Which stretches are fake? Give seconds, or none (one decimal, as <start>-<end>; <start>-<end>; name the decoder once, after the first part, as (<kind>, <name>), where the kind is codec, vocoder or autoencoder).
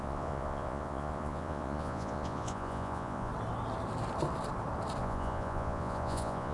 0.0-3.3 (vocoder, Vocos); 5.0-6.5